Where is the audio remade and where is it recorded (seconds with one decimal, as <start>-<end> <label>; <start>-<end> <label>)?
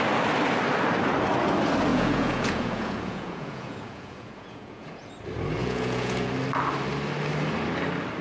0.0-1.9 recorded; 1.9-5.1 remade; 5.1-5.6 recorded; 5.6-6.3 remade; 6.3-8.2 recorded